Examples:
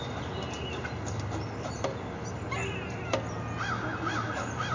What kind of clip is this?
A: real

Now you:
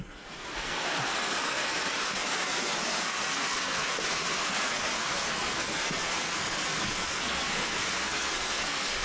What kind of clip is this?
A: fake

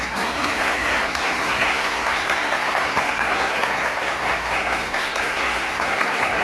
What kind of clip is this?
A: fake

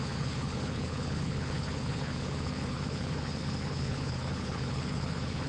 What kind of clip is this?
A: fake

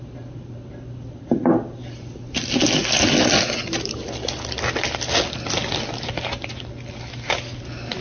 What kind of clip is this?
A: real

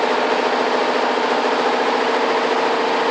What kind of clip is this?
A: real